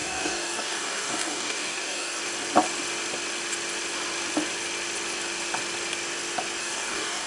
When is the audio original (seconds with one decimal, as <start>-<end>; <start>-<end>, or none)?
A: 2.2-6.6

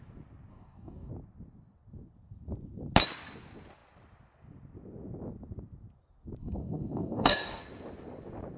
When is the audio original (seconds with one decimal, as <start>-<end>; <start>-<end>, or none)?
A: 0.0-0.5; 1.1-6.4; 7.6-8.6